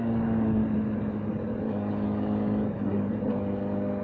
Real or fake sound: fake